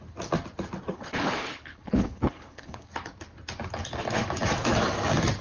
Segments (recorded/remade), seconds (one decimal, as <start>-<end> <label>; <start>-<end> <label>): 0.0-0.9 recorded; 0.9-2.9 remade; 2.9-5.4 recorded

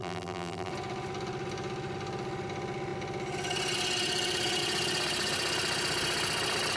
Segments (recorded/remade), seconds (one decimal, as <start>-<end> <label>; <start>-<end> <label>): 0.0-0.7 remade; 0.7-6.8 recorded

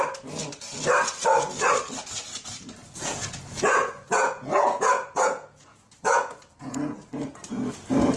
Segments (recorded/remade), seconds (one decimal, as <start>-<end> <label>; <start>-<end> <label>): 0.0-2.8 recorded; 2.8-7.1 remade; 7.1-8.2 recorded

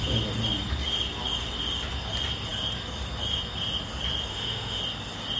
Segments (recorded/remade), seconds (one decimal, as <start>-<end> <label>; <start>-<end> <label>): 0.0-4.3 recorded; 4.3-4.8 remade; 4.8-5.4 recorded

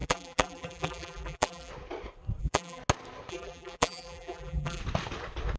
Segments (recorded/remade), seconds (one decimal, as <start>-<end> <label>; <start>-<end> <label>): 0.0-1.7 remade; 1.7-2.4 recorded; 2.4-2.8 remade; 2.8-3.3 recorded; 3.3-4.8 remade; 4.8-5.6 recorded